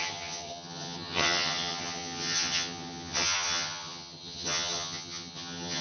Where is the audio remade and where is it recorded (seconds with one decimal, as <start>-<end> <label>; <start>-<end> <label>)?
0.0-5.8 remade